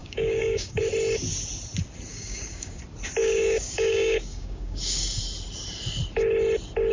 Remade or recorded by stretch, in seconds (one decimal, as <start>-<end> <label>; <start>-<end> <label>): 0.0-0.8 remade; 0.8-2.1 recorded; 2.1-2.8 remade; 2.8-3.2 recorded; 3.2-5.2 remade; 5.2-6.9 recorded